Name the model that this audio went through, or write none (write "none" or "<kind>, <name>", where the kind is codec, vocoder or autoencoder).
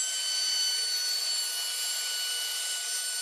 vocoder, BigVGAN v2